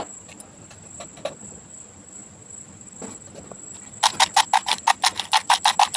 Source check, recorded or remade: recorded